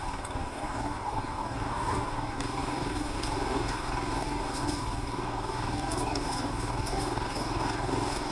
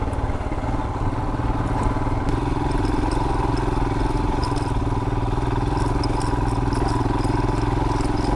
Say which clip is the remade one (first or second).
first